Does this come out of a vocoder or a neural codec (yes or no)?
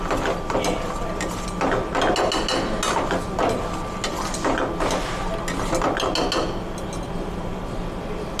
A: no